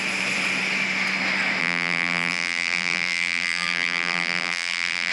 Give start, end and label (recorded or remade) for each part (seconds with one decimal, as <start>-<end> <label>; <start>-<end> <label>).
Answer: 0.0-1.6 recorded; 1.6-5.1 remade